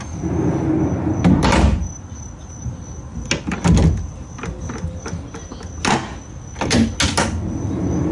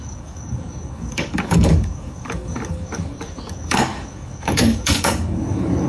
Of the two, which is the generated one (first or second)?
second